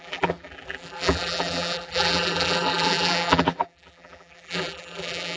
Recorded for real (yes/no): no